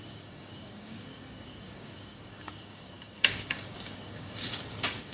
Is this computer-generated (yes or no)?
yes